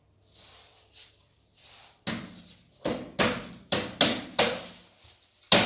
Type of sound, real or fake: real